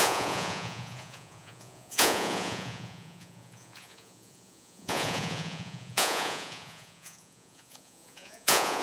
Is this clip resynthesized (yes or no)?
yes